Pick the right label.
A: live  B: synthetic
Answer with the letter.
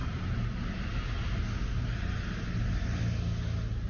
A